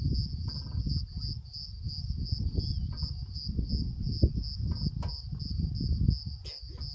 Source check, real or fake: real